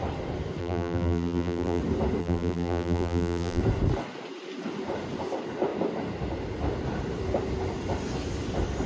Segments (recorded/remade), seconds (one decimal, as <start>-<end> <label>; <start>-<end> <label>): 0.0-0.6 recorded; 0.6-1.8 remade; 1.8-2.2 recorded; 2.2-3.6 remade; 3.6-8.9 recorded